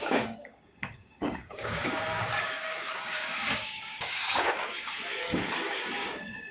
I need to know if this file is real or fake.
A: fake